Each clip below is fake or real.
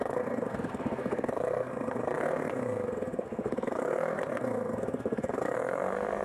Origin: fake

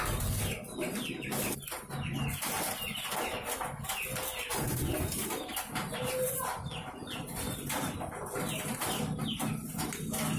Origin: real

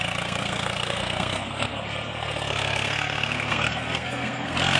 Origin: fake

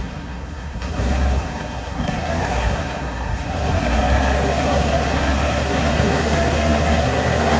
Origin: fake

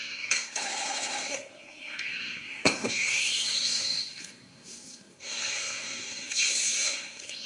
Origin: fake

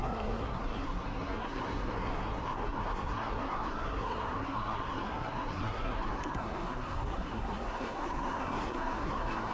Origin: fake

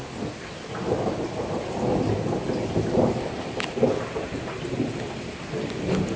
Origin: real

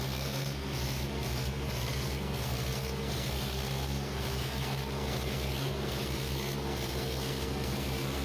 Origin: fake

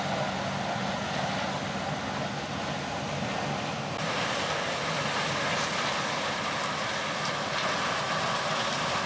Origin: real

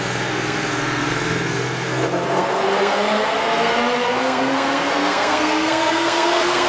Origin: fake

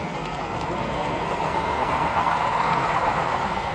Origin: fake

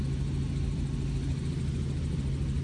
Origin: real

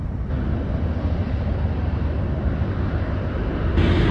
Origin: real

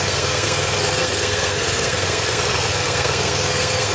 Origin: fake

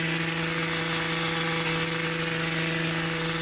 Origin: real